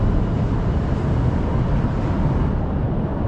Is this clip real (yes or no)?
yes